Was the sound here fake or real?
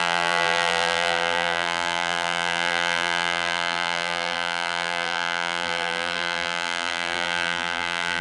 fake